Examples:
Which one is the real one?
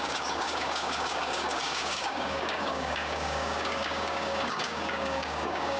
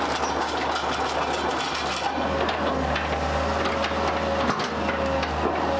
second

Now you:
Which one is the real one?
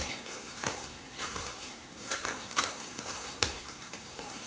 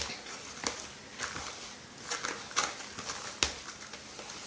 second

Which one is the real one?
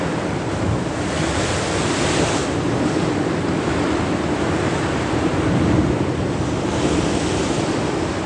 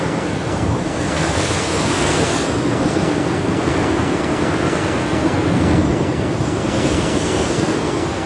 first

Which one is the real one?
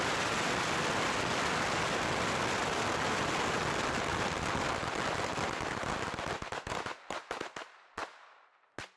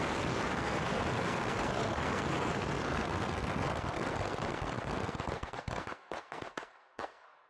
first